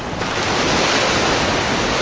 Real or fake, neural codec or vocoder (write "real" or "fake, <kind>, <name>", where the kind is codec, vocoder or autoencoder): real